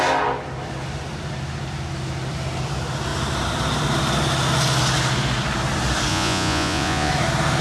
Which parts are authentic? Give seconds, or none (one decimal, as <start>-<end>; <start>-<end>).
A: 0.0-6.1; 7.1-7.6